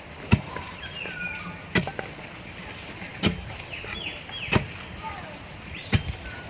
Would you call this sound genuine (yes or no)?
yes